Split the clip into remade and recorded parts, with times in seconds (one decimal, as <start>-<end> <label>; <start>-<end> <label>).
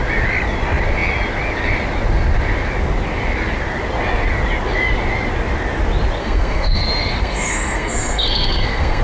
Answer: 0.0-6.2 recorded; 6.2-9.0 remade